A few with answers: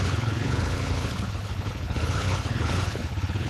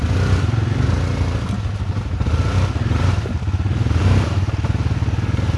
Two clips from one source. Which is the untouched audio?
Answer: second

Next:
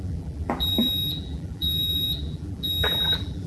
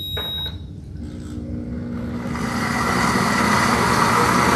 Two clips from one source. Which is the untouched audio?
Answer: second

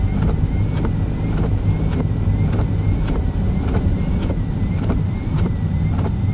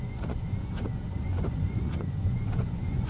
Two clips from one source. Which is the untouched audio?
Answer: first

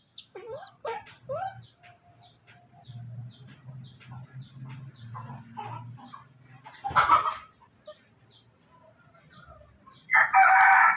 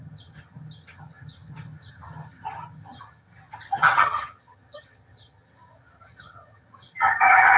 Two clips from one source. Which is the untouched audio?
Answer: first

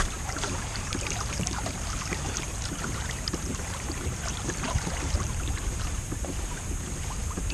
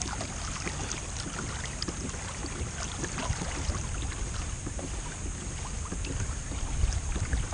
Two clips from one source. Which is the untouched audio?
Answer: second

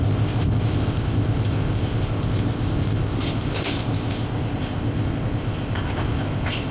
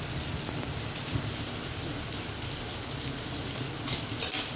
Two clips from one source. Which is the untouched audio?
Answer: second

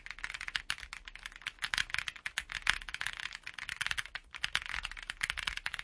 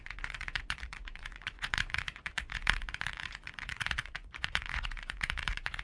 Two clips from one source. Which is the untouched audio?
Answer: first